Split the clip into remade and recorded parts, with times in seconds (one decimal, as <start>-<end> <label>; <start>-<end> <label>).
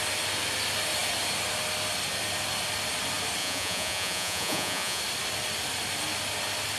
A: 0.0-3.4 recorded; 3.4-5.0 remade; 5.0-6.8 recorded